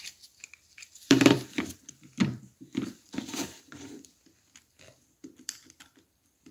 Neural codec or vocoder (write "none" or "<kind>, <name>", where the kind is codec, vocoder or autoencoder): vocoder, BigVGAN v2